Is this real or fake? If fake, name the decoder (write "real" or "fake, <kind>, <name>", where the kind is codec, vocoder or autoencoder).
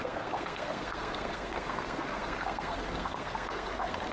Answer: fake, codec, SNAC